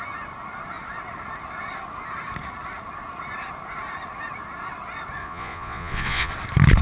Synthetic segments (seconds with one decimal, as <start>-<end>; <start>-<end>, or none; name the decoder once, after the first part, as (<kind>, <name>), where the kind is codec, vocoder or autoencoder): 5.2-6.3 (vocoder, Vocos)